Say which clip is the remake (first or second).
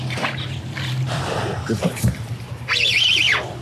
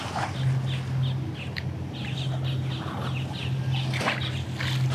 first